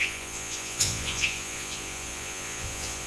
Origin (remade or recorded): remade